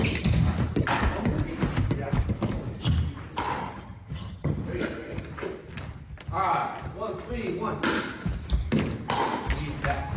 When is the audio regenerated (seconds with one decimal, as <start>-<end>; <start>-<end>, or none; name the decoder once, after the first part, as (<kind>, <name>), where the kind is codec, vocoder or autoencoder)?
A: 3.6-4.6 (vocoder, HiFi-GAN)